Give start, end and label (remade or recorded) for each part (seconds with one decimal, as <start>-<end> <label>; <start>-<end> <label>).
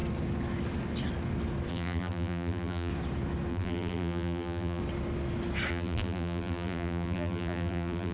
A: 0.0-1.7 recorded; 1.7-2.9 remade; 2.9-3.5 recorded; 3.5-4.8 remade; 4.8-5.7 recorded; 5.7-8.1 remade